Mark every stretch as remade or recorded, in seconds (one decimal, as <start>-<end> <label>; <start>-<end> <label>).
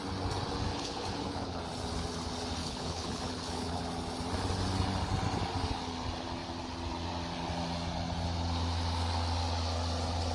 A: 0.0-0.7 recorded; 0.7-1.6 remade; 1.6-2.6 recorded; 2.6-3.8 remade; 3.8-10.3 recorded